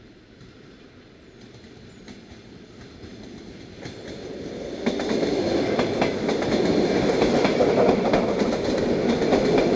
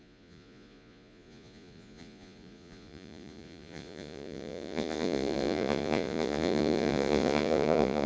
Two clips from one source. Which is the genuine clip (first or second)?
first